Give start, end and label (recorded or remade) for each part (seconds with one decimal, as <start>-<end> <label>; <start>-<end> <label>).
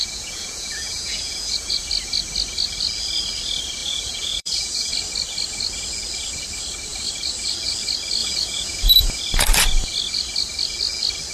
0.0-1.8 remade; 1.8-3.8 recorded; 3.8-4.9 remade; 4.9-8.2 recorded; 8.2-9.2 remade; 9.2-11.3 recorded